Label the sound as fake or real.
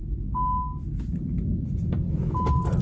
real